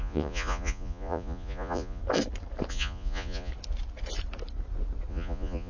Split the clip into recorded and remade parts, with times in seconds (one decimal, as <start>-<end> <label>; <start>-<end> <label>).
0.0-2.0 remade; 2.0-2.7 recorded; 2.7-3.5 remade; 3.5-5.1 recorded; 5.1-5.7 remade